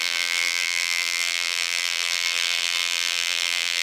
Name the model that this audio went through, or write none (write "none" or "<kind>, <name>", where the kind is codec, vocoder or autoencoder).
vocoder, BigVGAN v2